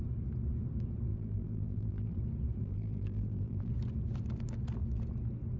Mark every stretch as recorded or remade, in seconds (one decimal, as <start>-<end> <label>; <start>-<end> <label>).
0.0-1.1 recorded; 1.1-2.2 remade; 2.2-2.6 recorded; 2.6-3.7 remade; 3.7-5.6 recorded

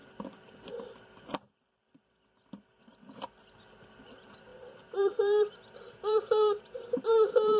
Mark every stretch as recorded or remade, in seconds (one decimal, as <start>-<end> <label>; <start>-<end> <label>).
0.0-2.8 recorded; 2.8-7.6 remade

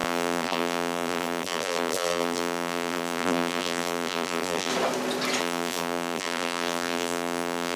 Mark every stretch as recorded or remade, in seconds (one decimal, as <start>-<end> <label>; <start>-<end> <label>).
0.0-4.7 remade; 4.7-5.4 recorded; 5.4-7.8 remade